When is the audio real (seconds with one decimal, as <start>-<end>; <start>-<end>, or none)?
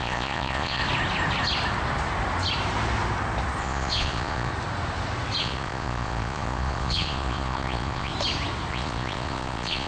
0.8-3.6; 4.5-5.4; 8.1-8.7